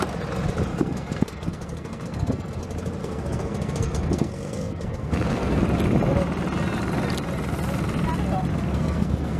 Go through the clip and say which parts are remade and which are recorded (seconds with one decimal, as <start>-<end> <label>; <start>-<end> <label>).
0.0-0.7 recorded; 0.7-2.6 remade; 2.6-3.0 recorded; 3.0-5.6 remade; 5.6-8.7 recorded; 8.7-9.4 remade